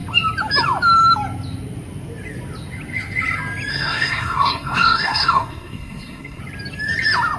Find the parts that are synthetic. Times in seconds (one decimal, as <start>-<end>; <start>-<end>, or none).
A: 3.7-6.4

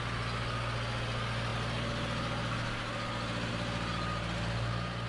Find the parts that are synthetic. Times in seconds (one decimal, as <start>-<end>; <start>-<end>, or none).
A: none